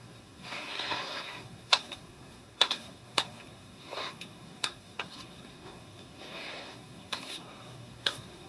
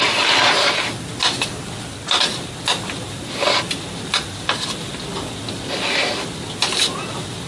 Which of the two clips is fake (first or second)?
first